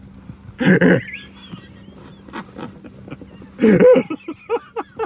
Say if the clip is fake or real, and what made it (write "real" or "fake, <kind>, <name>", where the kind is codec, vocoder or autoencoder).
real